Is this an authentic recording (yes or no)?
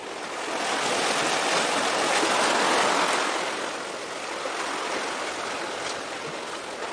yes